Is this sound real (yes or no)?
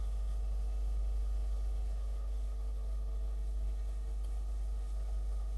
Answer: no